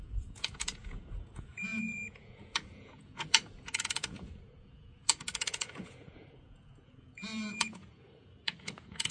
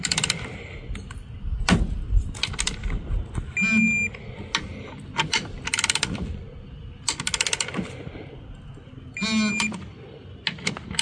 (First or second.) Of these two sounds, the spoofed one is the first